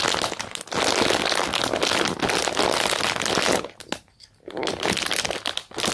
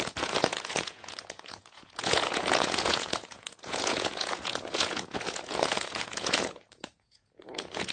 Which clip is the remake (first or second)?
second